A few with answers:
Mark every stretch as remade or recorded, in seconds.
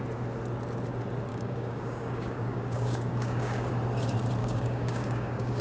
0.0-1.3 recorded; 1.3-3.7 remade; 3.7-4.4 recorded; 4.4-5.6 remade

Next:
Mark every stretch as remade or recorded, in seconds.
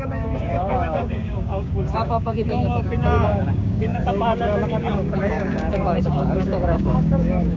0.0-7.6 remade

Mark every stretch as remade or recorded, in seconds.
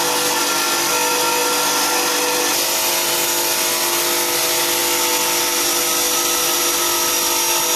0.0-7.8 recorded